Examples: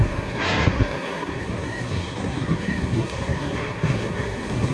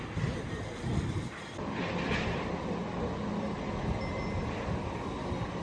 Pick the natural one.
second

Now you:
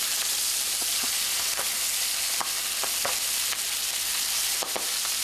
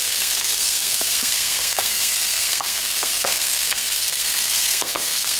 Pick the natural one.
first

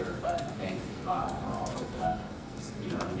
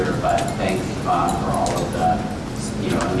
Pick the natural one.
second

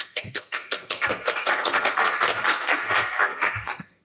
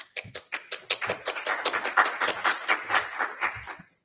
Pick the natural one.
second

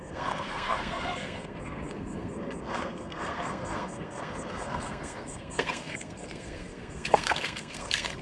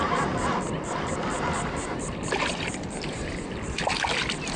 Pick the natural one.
second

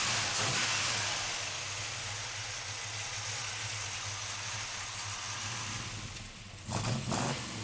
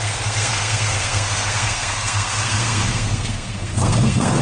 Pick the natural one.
first